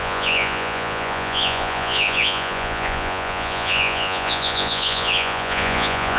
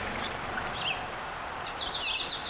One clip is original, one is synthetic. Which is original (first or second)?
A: second